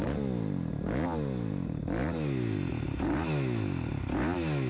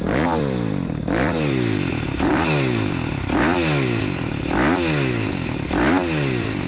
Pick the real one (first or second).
first